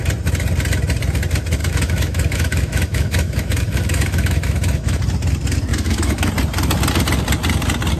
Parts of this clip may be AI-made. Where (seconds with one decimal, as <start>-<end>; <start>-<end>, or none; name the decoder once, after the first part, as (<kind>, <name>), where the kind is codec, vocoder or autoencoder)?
1.6-5.0 (autoencoder, DAC-VAE); 5.7-6.3